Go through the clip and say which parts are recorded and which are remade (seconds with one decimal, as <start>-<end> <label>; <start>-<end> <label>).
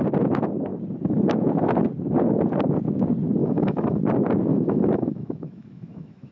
0.0-3.4 recorded; 3.4-4.0 remade; 4.0-4.5 recorded; 4.5-6.3 remade